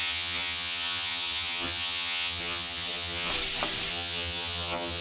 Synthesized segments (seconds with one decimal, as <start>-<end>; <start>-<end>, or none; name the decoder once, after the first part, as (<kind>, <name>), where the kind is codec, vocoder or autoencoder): 0.0-3.3 (vocoder, HiFi-GAN); 3.9-5.0